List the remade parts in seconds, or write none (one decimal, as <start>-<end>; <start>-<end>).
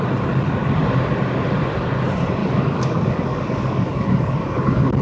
2.4-5.0